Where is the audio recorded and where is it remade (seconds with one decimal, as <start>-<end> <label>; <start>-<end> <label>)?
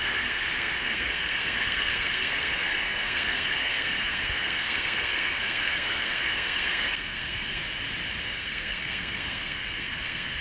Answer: 0.0-7.6 remade; 7.6-8.2 recorded; 8.2-10.4 remade